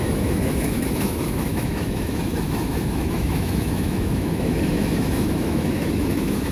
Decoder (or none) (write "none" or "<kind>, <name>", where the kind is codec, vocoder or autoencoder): autoencoder, DAC-VAE